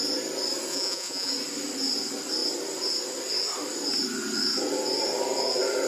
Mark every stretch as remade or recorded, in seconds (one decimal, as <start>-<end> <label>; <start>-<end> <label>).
0.0-0.7 recorded; 0.7-1.3 remade; 1.3-5.9 recorded

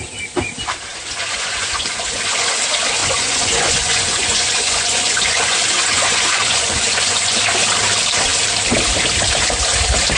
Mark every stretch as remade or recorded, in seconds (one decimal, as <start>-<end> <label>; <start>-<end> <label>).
0.0-0.9 recorded; 0.9-2.6 remade; 2.6-3.0 recorded; 3.0-7.4 remade; 7.4-10.2 recorded

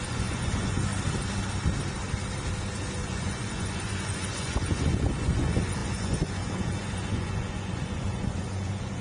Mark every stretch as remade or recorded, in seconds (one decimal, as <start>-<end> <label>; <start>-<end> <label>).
0.0-0.9 remade; 0.9-3.0 recorded; 3.0-9.0 remade

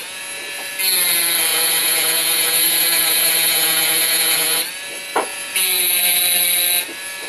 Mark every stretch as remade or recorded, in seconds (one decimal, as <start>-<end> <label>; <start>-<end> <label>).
0.0-0.7 remade; 0.7-1.5 recorded; 1.5-4.6 remade; 4.6-5.3 recorded; 5.3-6.2 remade; 6.2-7.3 recorded

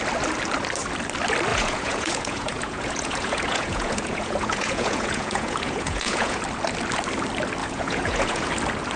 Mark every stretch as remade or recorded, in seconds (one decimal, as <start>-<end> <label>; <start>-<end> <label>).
0.0-1.5 recorded; 1.5-6.4 remade; 6.4-7.6 recorded; 7.6-8.5 remade; 8.5-9.0 recorded

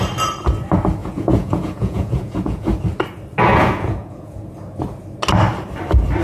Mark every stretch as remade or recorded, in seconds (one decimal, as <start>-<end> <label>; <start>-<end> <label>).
0.0-1.0 recorded; 1.0-2.7 remade; 2.7-3.5 recorded; 3.5-4.5 remade; 4.5-6.2 recorded

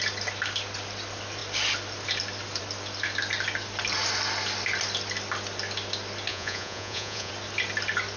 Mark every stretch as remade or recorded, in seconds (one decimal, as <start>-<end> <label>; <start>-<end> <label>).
0.0-6.3 recorded; 6.3-7.3 remade; 7.3-8.2 recorded